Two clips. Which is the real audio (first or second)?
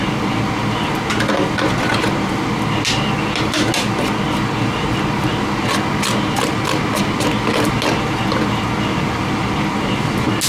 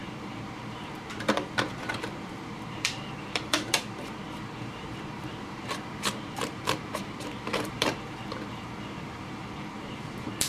first